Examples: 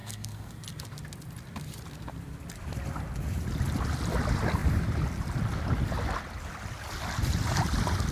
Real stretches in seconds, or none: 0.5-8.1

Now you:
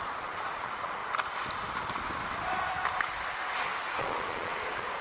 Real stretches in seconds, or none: 1.0-4.0

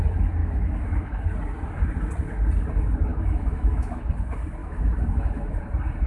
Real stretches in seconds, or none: 0.0-0.4; 1.2-3.1; 4.0-4.6; 5.6-6.1

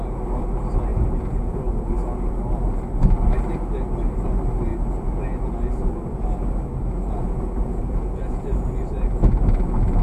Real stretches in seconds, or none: 0.0-0.9; 1.6-7.6; 8.8-10.0